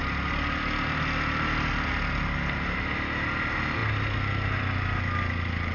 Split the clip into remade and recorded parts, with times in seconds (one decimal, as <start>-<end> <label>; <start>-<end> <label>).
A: 0.0-5.7 recorded